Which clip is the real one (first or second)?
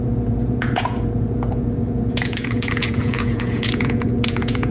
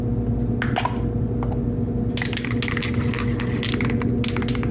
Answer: second